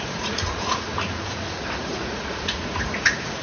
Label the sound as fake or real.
fake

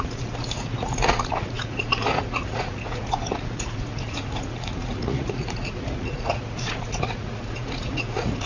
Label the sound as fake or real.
fake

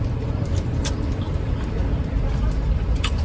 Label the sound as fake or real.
real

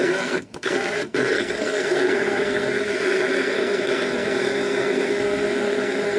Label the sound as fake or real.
fake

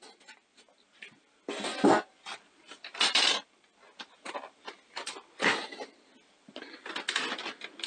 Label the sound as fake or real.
real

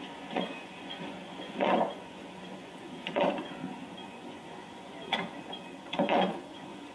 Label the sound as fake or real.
fake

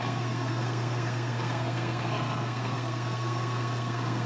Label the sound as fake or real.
fake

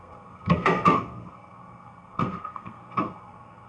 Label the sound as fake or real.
fake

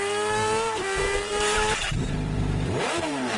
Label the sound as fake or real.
fake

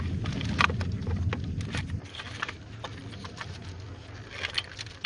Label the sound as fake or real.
real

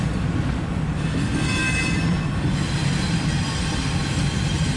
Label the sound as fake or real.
real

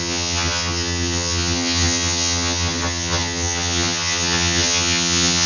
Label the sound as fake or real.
fake